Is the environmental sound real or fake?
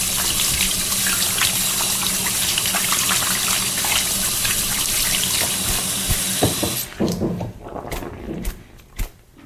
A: real